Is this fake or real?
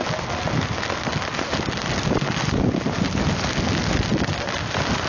real